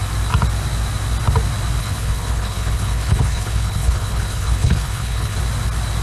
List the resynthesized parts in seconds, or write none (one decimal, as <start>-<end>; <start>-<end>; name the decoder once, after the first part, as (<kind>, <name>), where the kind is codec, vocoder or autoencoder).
1.8-5.4 (codec, HILCodec)

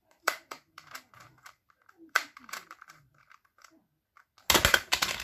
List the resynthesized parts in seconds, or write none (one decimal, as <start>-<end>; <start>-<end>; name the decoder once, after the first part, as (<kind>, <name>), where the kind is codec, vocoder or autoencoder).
0.0-3.8 (vocoder, BigVGAN v2); 4.7-5.2

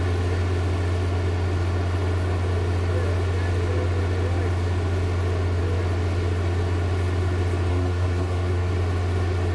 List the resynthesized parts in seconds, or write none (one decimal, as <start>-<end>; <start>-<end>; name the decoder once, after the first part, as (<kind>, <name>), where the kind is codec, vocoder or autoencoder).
7.7-8.7 (codec, SNAC)